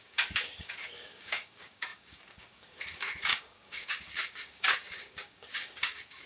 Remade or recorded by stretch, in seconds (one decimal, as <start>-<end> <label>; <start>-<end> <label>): 0.0-6.3 remade